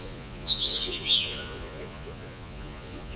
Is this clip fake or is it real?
fake